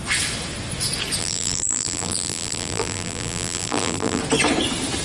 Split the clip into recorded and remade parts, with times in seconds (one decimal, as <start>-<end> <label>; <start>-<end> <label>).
0.0-1.2 recorded; 1.2-4.2 remade; 4.2-5.0 recorded